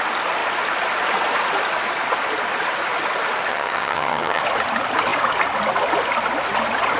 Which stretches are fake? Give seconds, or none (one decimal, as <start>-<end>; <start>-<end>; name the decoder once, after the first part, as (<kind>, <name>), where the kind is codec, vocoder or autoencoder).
3.5-4.4 (vocoder, HiFi-GAN)